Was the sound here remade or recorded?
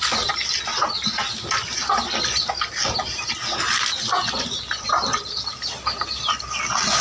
recorded